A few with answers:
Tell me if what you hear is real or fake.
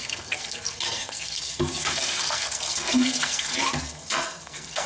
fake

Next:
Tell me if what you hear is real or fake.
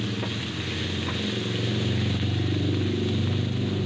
real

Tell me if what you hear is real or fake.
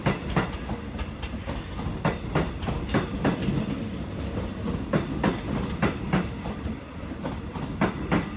real